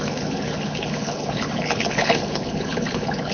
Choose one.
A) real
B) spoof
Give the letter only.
B